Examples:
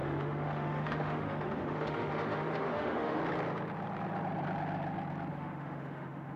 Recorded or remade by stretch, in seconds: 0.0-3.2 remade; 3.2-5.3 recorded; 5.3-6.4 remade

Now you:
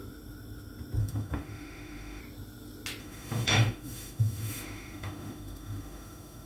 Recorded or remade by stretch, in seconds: 0.0-1.0 recorded; 1.0-2.2 remade; 2.2-3.0 recorded; 3.0-6.5 remade

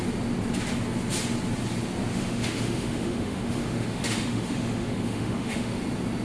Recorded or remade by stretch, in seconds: 0.0-2.1 recorded; 2.1-5.8 remade; 5.8-6.2 recorded

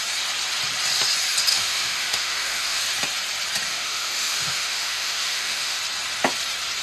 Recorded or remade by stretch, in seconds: 0.0-1.5 recorded; 1.5-2.8 remade; 2.8-3.7 recorded; 3.7-5.8 remade; 5.8-6.8 recorded

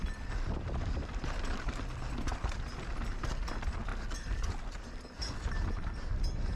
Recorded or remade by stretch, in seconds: 0.0-6.6 recorded

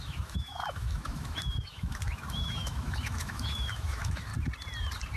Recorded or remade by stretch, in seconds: 0.0-4.3 remade; 4.3-5.2 recorded

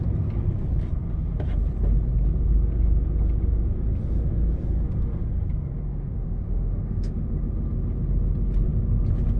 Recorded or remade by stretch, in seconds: 0.0-5.9 recorded; 5.9-7.1 remade; 7.1-9.4 recorded